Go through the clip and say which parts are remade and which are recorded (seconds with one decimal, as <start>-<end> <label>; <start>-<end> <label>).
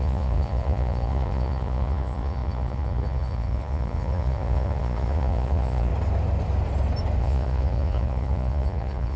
0.0-5.9 remade; 5.9-7.2 recorded; 7.2-9.2 remade